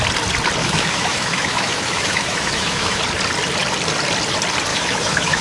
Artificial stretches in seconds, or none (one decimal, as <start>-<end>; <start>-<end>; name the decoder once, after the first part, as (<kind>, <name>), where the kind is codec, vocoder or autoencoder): 0.6-3.0 (autoencoder, DAC-VAE); 4.7-5.4